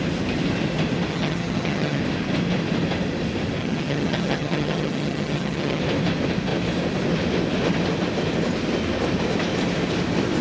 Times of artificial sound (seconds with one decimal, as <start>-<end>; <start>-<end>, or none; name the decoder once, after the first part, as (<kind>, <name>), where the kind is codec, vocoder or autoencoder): 1.1-2.0 (vocoder, HiFi-GAN); 3.6-5.8